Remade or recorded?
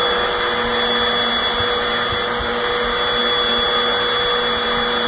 recorded